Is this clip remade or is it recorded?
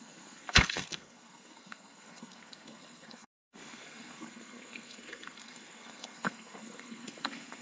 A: remade